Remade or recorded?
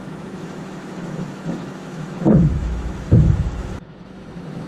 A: remade